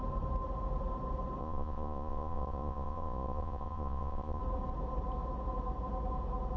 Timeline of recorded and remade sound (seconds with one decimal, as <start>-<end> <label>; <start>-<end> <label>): 0.0-1.4 recorded; 1.4-4.4 remade; 4.4-6.6 recorded